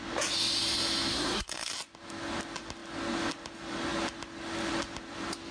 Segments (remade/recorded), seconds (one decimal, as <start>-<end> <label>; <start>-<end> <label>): 0.0-1.1 recorded; 1.1-1.7 remade; 1.7-5.5 recorded